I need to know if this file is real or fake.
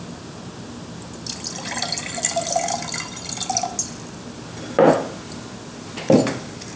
real